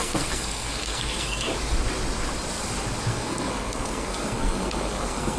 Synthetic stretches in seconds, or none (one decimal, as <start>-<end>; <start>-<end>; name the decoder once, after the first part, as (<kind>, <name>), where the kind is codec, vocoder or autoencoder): 0.0-1.5 (codec, SNAC); 3.0-5.4